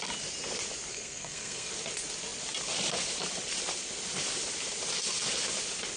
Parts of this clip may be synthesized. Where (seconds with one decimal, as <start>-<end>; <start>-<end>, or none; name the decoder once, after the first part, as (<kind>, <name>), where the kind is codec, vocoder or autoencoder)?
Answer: 0.9-1.7 (codec, SNAC)